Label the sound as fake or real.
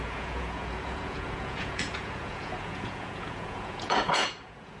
fake